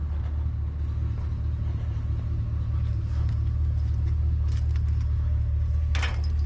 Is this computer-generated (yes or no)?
no